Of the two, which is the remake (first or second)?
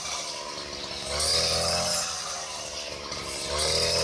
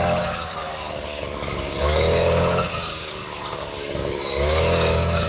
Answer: second